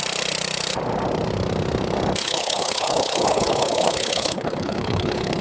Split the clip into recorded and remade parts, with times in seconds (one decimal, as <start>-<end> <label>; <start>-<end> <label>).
0.0-2.2 recorded; 2.2-5.4 remade